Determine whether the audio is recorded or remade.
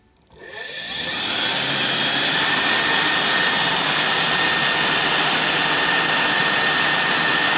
remade